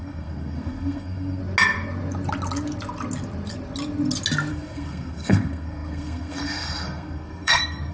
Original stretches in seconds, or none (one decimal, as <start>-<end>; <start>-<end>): 1.4-4.5